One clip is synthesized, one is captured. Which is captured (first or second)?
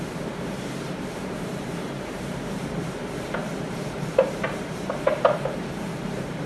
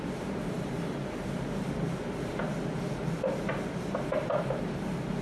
second